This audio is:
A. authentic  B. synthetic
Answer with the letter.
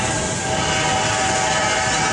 A